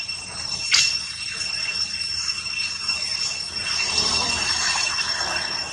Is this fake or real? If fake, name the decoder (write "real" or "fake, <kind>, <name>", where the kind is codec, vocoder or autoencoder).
real